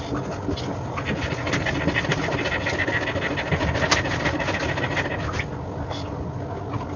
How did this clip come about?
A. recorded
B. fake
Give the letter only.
A